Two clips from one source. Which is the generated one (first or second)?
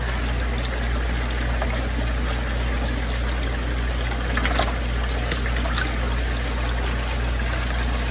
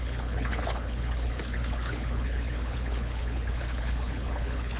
second